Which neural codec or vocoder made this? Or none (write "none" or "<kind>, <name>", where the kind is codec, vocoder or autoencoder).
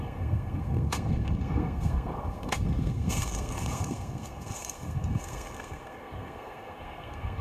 codec, SNAC